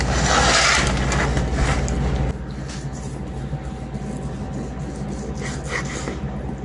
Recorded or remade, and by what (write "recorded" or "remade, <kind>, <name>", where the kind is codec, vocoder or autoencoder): recorded